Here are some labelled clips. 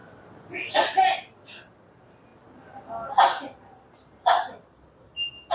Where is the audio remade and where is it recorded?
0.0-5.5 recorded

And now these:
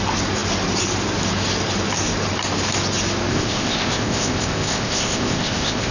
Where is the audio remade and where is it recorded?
0.0-3.3 recorded; 3.3-5.9 remade

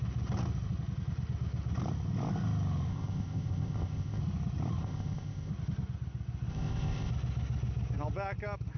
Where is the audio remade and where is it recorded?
0.0-2.9 recorded; 2.9-4.2 remade; 4.2-4.8 recorded; 4.8-5.5 remade; 5.5-6.5 recorded; 6.5-7.1 remade; 7.1-8.8 recorded

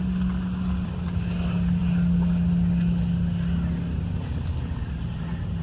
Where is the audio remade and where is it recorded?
0.0-5.6 recorded

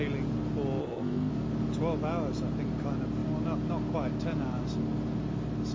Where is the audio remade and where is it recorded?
0.0-0.8 recorded; 0.8-1.3 remade; 1.3-5.7 recorded

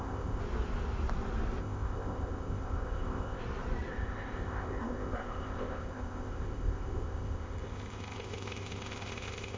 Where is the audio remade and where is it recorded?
0.0-0.4 remade; 0.4-1.6 recorded; 1.6-3.4 remade; 3.4-3.9 recorded; 3.9-9.6 remade

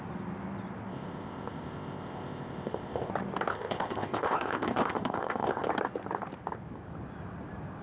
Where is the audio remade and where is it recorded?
0.0-0.9 recorded; 0.9-3.1 remade; 3.1-3.5 recorded; 3.5-5.7 remade; 5.7-7.8 recorded